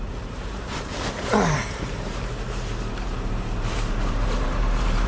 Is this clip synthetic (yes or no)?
yes